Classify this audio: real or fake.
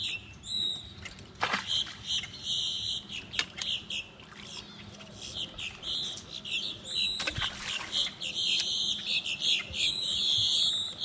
real